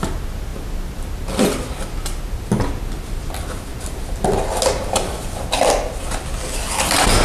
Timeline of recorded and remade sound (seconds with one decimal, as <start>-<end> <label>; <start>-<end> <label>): 0.0-7.2 recorded